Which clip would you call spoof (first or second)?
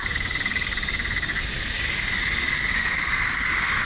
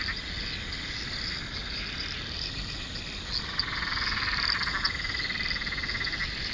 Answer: first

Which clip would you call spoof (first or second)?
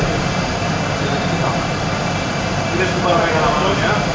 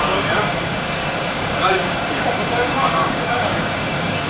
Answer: second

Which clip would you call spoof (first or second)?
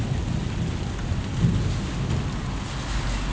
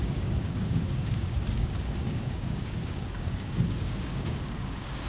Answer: second